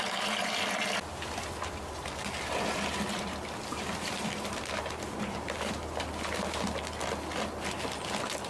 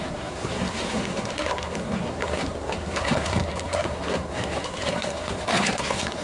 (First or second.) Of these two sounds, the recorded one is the first